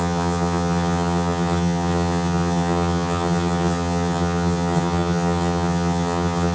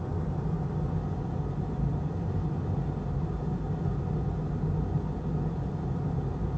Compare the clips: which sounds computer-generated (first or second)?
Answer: first